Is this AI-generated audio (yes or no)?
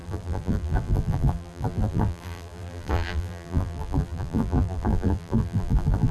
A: yes